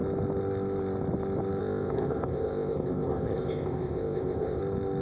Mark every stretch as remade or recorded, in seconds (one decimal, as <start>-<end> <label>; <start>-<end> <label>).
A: 0.0-1.6 recorded; 1.6-4.6 remade; 4.6-5.0 recorded